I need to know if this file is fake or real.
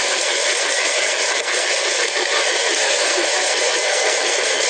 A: fake